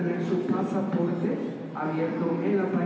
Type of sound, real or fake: real